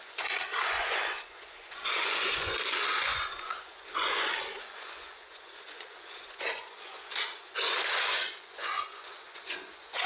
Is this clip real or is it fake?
fake